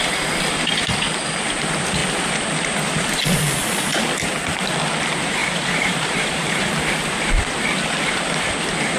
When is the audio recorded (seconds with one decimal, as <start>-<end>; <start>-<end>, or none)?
0.0-5.4; 6.7-9.0